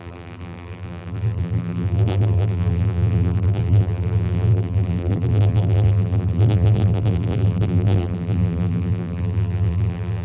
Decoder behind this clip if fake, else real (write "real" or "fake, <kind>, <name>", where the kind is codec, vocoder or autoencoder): fake, vocoder, BigVGAN v2